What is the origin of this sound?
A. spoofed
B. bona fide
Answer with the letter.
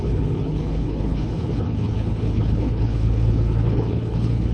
A